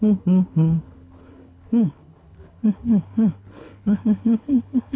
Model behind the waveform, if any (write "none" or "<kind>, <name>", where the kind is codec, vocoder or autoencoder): codec, HILCodec